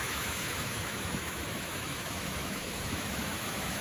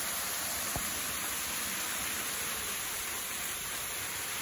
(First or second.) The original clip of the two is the second